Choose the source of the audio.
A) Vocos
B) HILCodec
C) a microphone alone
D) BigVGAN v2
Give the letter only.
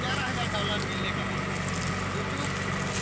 C